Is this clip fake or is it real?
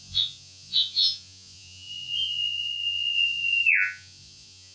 fake